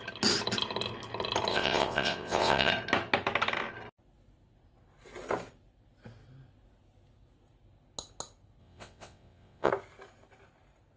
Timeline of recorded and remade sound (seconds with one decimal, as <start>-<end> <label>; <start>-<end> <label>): 0.0-1.5 recorded; 1.5-2.7 remade; 2.7-8.6 recorded; 8.6-9.7 remade; 9.7-11.0 recorded